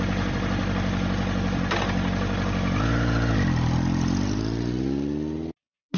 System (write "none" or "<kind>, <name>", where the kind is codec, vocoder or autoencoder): none